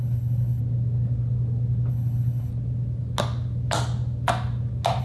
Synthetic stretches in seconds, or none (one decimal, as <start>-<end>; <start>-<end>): 0.0-0.6; 1.9-2.5